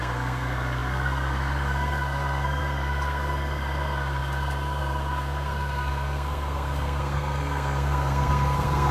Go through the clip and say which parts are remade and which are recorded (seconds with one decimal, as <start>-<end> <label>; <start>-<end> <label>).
0.0-8.9 remade